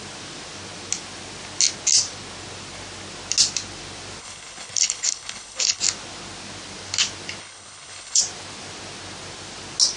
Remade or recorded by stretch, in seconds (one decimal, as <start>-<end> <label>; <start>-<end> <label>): 0.0-4.2 recorded; 4.2-5.8 remade; 5.8-7.4 recorded; 7.4-8.2 remade; 8.2-10.0 recorded

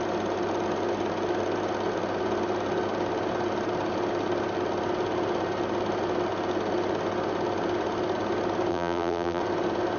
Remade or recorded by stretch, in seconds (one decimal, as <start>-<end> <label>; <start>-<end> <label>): 0.0-8.7 recorded; 8.7-9.4 remade; 9.4-10.0 recorded